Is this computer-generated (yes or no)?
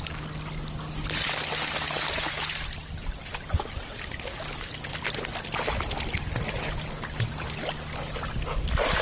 no